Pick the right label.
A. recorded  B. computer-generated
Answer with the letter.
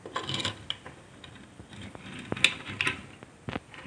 A